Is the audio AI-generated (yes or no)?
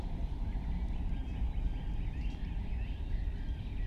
no